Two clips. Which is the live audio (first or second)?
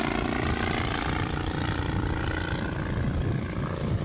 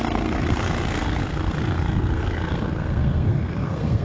first